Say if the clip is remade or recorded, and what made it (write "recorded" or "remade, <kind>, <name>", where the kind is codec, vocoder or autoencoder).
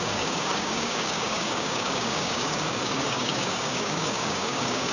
remade, codec, DAC